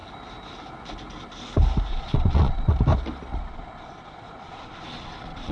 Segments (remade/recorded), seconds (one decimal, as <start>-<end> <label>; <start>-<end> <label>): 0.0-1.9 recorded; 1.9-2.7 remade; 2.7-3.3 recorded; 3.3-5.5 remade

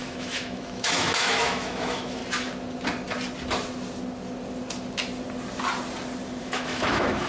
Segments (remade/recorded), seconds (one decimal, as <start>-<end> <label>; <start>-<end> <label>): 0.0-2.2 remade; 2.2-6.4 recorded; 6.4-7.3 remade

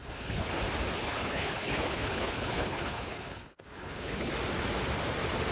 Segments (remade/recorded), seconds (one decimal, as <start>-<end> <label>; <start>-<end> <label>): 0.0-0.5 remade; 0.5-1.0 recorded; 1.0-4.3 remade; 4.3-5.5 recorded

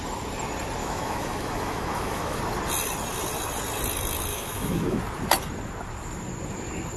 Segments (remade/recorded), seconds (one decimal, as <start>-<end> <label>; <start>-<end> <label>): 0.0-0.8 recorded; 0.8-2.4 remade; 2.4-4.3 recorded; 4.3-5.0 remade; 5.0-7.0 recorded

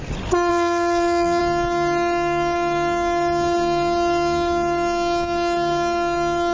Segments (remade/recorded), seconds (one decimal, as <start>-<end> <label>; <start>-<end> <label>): 0.0-0.5 recorded; 0.5-1.4 remade; 1.4-6.5 recorded

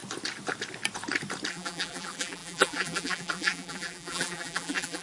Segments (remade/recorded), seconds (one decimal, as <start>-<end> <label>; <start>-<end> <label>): 0.0-1.5 recorded; 1.5-5.0 remade